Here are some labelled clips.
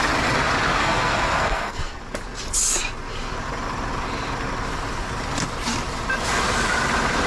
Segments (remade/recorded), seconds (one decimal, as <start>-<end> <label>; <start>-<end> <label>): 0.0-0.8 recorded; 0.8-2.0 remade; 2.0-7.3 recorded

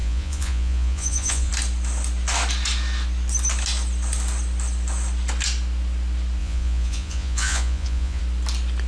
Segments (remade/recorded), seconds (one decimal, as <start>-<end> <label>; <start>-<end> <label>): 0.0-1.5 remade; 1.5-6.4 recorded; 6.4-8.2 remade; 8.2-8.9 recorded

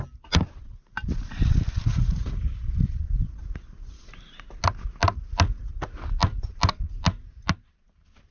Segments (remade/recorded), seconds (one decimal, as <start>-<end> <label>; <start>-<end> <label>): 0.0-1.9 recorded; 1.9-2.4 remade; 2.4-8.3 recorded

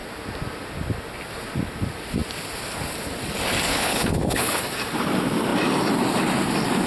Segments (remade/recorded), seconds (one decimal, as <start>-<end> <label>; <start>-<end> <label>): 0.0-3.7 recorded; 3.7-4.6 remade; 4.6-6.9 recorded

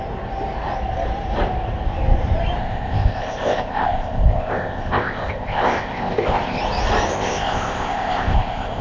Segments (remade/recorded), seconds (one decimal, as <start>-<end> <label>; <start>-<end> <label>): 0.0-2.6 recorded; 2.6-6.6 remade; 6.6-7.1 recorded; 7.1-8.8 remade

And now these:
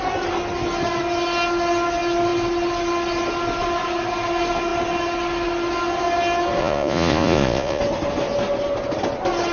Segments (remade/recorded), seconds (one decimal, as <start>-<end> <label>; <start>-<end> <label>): 0.0-6.6 recorded; 6.6-7.8 remade; 7.8-9.5 recorded

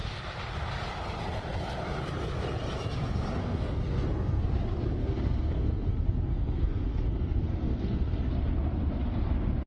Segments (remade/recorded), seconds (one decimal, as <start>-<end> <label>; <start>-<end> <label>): 0.0-3.4 recorded; 3.4-4.4 remade; 4.4-5.0 recorded; 5.0-8.3 remade; 8.3-9.7 recorded